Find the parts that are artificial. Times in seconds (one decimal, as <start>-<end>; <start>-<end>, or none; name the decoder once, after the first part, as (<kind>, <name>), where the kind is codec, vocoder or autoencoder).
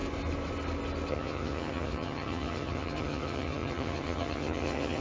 1.1-5.0 (vocoder, HiFi-GAN)